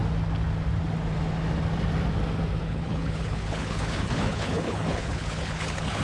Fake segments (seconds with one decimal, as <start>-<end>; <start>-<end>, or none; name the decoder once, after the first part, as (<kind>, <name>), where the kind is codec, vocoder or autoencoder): 2.6-6.0 (codec, HILCodec)